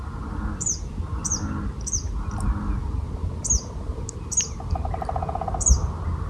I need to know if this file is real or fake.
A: real